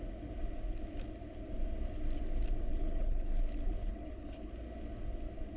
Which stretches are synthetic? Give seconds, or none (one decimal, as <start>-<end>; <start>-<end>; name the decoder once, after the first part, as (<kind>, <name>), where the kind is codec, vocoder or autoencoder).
2.7-3.4 (codec, HILCodec); 3.8-4.5